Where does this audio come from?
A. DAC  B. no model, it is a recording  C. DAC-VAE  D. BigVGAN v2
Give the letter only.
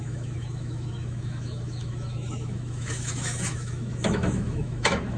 C